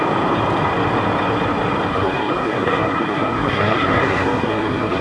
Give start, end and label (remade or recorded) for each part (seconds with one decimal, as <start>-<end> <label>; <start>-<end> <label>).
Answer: 0.0-1.9 recorded; 1.9-5.0 remade